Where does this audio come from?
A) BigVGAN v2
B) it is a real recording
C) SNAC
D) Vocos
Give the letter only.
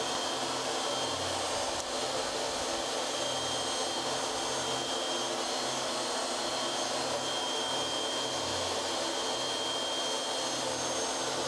B